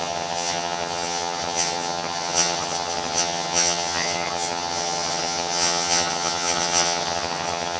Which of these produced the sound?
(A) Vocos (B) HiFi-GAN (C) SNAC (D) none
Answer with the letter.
B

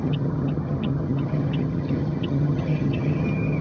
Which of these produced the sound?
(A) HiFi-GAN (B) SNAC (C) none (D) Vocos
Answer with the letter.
A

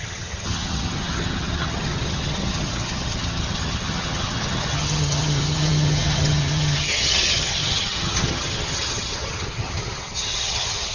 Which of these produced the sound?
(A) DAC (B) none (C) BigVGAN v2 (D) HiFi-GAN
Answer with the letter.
D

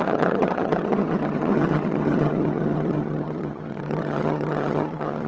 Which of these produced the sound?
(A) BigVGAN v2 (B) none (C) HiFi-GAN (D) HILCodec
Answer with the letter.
C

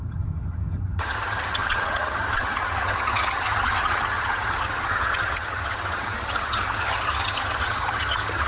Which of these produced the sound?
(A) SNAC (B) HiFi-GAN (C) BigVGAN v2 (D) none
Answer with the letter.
B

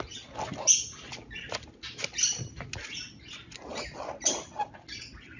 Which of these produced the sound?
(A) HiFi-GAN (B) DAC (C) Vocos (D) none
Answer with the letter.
D